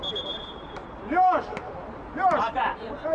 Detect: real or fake fake